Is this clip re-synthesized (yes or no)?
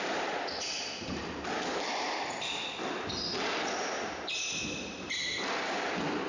no